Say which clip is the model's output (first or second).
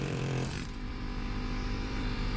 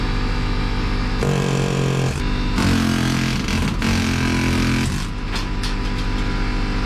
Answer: first